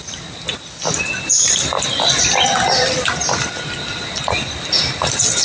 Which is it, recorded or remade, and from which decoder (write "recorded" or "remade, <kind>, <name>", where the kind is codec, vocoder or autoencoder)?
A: recorded